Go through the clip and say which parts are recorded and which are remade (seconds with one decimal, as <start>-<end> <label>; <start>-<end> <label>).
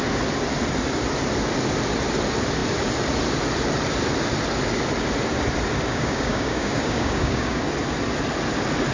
0.0-5.9 recorded; 5.9-7.6 remade; 7.6-8.9 recorded